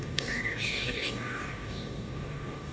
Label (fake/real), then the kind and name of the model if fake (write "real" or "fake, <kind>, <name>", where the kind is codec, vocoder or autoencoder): fake, codec, DAC